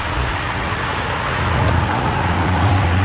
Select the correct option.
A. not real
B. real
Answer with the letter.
A